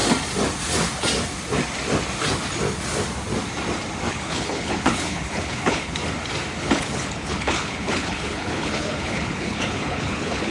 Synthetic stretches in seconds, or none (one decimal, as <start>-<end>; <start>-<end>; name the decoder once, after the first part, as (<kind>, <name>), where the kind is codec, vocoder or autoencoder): 4.1-6.0 (codec, HILCodec); 6.6-10.5